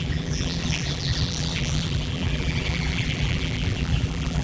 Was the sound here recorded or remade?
remade